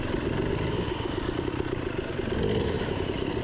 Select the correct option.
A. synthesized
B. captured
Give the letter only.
B